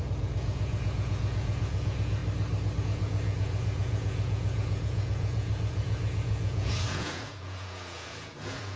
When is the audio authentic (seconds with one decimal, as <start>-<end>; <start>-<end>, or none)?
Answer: 2.2-2.8